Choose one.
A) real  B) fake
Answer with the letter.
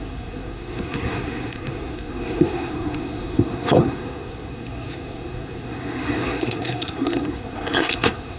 B